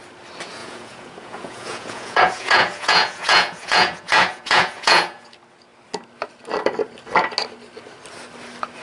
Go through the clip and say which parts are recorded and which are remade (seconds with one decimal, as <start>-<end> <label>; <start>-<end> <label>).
0.0-0.6 recorded; 0.6-5.3 remade; 5.3-8.8 recorded